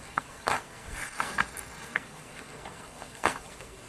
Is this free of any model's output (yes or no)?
no